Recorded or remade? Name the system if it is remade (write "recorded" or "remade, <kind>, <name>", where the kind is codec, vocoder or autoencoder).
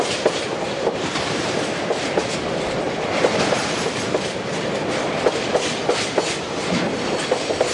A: remade, vocoder, BigVGAN v2